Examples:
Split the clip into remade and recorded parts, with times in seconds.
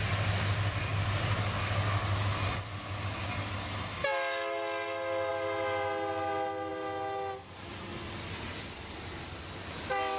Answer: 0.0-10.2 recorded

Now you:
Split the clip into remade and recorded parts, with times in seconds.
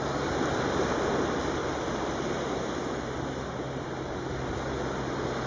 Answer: 0.0-1.6 recorded; 1.6-4.3 remade; 4.3-5.5 recorded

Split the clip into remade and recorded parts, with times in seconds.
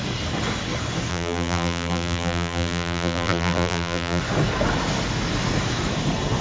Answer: 0.0-1.1 recorded; 1.1-4.2 remade; 4.2-6.4 recorded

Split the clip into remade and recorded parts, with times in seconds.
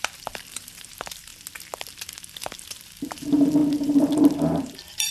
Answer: 0.0-1.3 remade; 1.3-2.8 recorded; 2.8-5.1 remade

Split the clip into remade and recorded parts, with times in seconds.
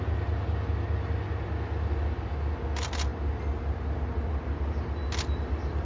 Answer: 0.0-5.8 recorded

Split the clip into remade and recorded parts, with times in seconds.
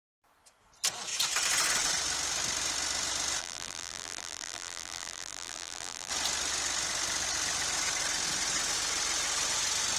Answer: 0.0-3.4 recorded; 3.4-6.1 remade; 6.1-10.0 recorded